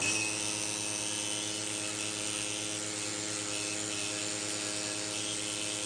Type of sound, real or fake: real